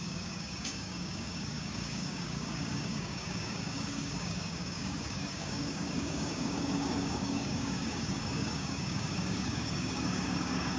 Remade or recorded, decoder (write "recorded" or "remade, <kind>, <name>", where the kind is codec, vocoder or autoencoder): remade, codec, DAC